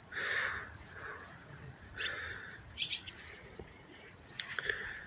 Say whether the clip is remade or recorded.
remade